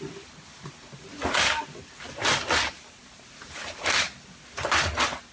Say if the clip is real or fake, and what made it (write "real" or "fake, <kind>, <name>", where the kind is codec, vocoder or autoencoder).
real